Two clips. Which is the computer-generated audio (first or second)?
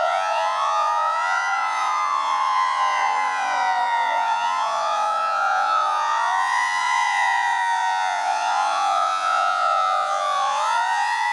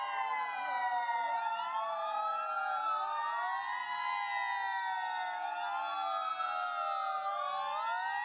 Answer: first